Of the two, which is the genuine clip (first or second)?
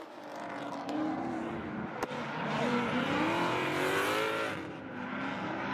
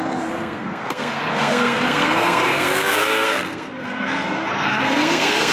first